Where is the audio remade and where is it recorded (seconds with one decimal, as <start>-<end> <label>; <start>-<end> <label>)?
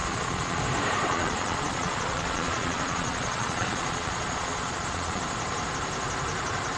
0.0-0.6 remade; 0.6-1.1 recorded; 1.1-5.2 remade; 5.2-6.8 recorded